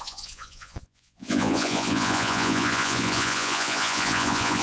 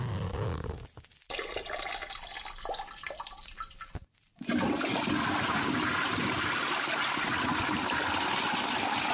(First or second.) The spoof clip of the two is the first